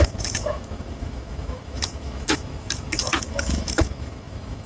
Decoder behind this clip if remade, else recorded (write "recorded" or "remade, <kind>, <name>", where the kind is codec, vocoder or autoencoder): remade, autoencoder, DAC-VAE